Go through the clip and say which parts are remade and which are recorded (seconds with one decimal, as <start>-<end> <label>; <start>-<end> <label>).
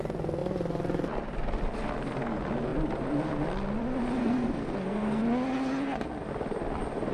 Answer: 0.0-4.2 recorded; 4.2-5.2 remade; 5.2-7.1 recorded